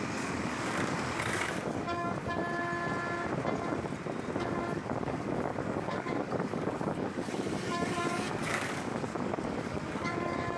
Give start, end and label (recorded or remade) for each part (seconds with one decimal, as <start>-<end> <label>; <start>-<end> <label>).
0.0-2.4 remade; 2.4-4.4 recorded; 4.4-10.6 remade